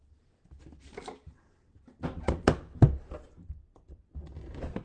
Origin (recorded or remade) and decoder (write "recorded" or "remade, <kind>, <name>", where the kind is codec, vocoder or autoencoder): recorded